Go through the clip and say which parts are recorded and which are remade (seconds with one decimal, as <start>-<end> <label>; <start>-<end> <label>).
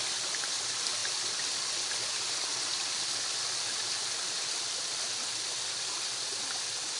0.0-7.0 recorded